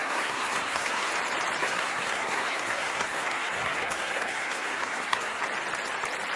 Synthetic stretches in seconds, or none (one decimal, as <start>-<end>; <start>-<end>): 0.0-1.1; 1.6-5.4